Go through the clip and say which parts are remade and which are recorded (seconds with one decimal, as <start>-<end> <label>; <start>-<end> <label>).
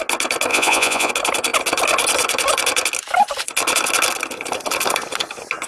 0.0-0.5 recorded; 0.5-1.1 remade; 1.1-5.7 recorded